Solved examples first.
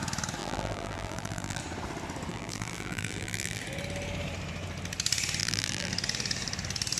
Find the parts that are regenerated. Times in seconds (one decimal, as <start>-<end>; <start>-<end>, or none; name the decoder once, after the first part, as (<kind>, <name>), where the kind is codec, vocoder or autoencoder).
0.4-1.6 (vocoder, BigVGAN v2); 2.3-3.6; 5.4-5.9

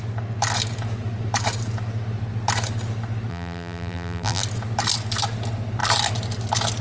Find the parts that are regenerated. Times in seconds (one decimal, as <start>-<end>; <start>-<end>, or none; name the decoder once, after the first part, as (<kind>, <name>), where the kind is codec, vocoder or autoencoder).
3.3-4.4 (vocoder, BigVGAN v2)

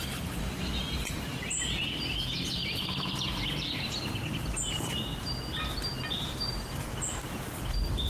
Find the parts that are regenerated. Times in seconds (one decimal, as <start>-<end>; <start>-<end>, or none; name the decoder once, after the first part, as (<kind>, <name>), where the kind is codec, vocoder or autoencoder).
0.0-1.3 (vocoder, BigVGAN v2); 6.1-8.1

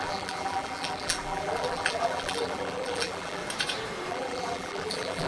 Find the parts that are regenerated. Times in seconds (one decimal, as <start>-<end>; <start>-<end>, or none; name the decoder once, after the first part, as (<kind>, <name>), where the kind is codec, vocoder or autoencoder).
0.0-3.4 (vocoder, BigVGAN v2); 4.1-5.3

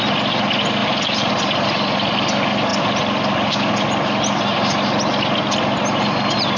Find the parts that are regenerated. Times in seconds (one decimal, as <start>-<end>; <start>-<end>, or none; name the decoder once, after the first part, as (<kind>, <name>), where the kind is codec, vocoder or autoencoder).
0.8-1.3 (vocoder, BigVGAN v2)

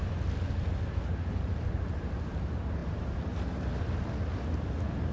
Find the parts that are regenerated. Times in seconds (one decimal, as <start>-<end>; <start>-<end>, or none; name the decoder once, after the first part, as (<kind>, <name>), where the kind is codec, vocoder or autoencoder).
none

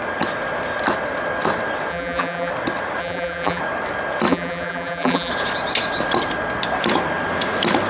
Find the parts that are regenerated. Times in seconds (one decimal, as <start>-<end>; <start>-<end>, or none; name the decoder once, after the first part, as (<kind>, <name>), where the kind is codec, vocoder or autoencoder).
1.9-2.5 (vocoder, BigVGAN v2); 3.0-3.6; 4.3-5.3